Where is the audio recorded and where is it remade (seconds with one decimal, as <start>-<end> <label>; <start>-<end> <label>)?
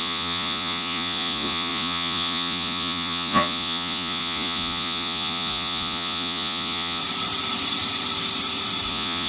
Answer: 0.0-7.0 remade; 7.0-8.9 recorded; 8.9-9.3 remade